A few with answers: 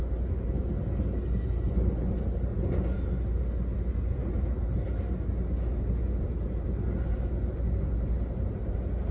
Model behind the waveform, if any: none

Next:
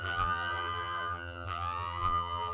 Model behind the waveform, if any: vocoder, BigVGAN v2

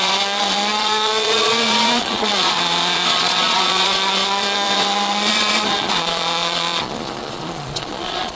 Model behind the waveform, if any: vocoder, Vocos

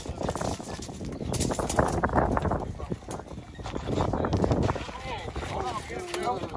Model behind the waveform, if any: none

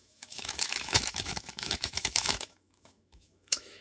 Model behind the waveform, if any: autoencoder, DAC-VAE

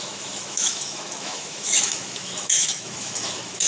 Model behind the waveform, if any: autoencoder, DAC-VAE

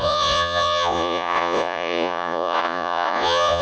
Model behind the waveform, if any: vocoder, Vocos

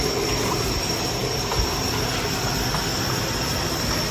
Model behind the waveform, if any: none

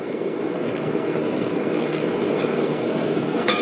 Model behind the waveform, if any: codec, SNAC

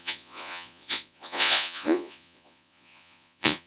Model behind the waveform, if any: vocoder, Vocos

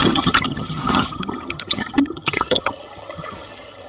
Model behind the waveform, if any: vocoder, HiFi-GAN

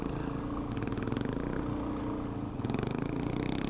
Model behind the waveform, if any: none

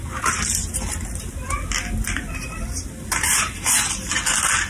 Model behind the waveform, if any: none